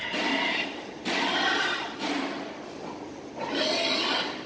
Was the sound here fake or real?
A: real